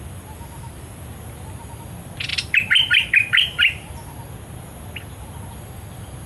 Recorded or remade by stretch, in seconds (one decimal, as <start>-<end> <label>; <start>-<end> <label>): 0.0-2.3 recorded; 2.3-3.9 remade; 3.9-6.3 recorded